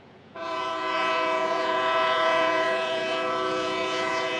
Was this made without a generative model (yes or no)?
no